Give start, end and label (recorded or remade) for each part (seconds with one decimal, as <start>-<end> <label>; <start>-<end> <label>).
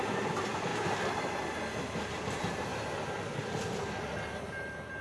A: 0.0-0.7 remade; 0.7-2.1 recorded; 2.1-2.7 remade; 2.7-4.4 recorded; 4.4-5.0 remade